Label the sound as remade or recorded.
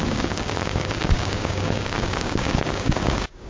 remade